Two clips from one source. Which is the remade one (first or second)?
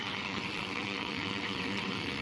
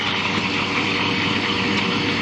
first